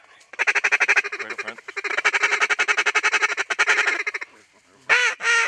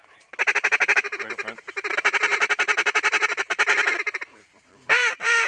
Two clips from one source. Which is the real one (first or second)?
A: first